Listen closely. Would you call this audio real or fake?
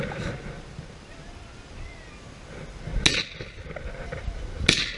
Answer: real